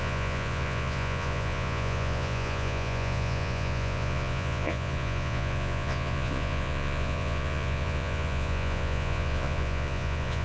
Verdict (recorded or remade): remade